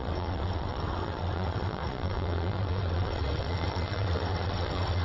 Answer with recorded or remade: remade